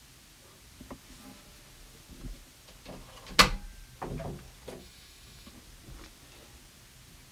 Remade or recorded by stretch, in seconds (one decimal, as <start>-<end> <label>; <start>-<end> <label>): 0.0-4.8 recorded; 4.8-5.5 remade; 5.5-7.3 recorded